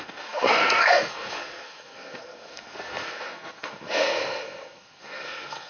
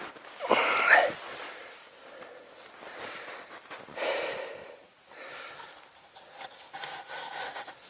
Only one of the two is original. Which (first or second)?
second